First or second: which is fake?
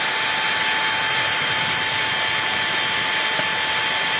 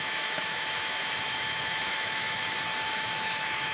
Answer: second